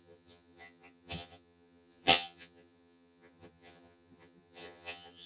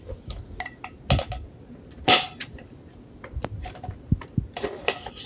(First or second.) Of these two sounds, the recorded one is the second